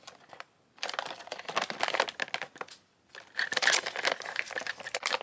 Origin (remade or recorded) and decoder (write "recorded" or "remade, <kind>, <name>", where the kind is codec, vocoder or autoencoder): recorded